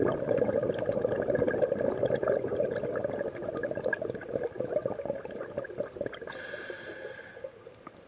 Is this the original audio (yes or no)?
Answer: yes